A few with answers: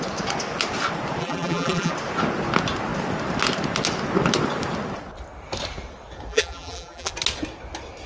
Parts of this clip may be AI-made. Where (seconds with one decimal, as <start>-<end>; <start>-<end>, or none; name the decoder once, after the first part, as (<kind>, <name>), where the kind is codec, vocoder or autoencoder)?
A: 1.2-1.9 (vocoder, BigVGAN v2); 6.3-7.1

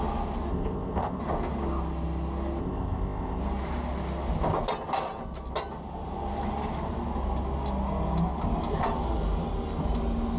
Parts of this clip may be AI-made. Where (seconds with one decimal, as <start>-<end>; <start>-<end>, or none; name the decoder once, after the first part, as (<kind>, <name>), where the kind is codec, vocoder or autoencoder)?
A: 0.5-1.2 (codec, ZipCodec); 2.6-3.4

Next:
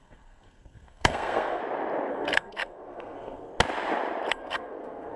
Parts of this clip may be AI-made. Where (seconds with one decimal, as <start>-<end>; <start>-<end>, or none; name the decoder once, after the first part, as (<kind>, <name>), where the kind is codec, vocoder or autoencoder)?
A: 0.0-1.6 (codec, SNAC); 2.1-3.5; 4.3-5.2

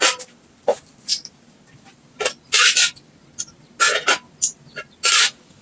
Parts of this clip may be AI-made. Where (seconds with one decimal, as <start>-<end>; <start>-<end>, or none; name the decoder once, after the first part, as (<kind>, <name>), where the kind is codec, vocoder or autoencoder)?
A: none